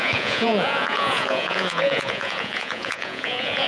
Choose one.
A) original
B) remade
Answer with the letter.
B